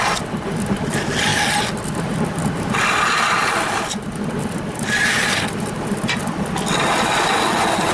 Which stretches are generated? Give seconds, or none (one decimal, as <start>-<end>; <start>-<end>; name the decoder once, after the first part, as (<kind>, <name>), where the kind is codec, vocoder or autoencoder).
none

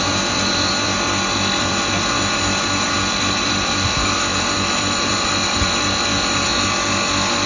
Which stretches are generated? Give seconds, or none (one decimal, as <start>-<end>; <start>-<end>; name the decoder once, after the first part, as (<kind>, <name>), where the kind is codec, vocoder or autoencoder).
0.0-6.5 (vocoder, BigVGAN v2)

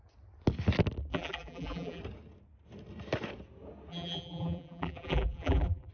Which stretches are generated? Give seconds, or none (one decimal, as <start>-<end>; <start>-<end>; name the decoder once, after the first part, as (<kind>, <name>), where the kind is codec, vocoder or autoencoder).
1.1-2.0 (vocoder, BigVGAN v2); 3.9-5.9

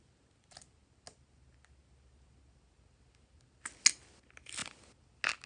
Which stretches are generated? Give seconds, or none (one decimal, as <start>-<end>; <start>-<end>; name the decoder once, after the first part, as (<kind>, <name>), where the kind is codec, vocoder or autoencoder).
none

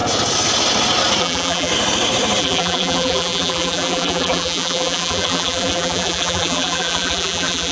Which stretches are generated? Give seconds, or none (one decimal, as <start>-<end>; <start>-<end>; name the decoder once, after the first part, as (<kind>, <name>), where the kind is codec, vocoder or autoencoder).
1.2-1.7 (vocoder, BigVGAN v2); 2.4-7.7

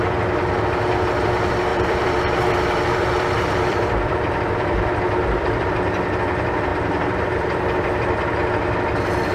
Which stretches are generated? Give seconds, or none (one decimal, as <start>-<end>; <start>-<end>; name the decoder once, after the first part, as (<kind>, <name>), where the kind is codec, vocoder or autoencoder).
1.7-5.6 (vocoder, BigVGAN v2)

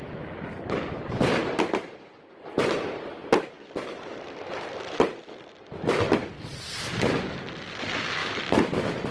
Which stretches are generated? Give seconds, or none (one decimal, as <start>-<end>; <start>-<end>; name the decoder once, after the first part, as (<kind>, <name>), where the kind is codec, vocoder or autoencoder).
8.2-9.1 (vocoder, BigVGAN v2)

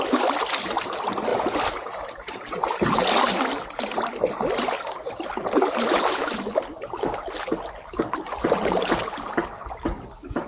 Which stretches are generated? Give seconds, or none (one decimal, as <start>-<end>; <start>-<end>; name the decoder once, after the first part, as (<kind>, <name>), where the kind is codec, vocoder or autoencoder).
1.3-3.0 (vocoder, BigVGAN v2)